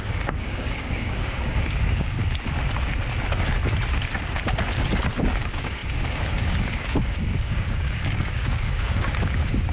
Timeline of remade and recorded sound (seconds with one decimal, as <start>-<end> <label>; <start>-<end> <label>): 0.0-2.2 remade; 2.2-5.2 recorded; 5.2-9.7 remade